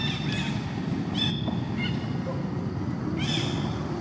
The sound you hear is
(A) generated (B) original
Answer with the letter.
B